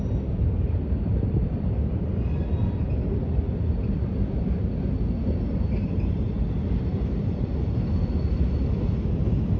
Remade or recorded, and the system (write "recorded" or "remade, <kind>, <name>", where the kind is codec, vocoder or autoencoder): recorded